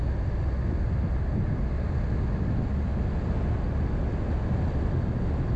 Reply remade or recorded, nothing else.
recorded